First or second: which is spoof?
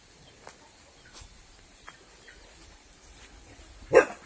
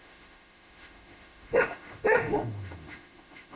second